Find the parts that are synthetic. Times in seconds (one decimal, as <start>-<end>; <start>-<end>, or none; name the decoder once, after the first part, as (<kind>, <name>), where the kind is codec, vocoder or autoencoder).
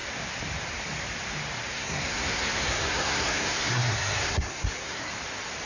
1.7-5.1 (codec, SNAC)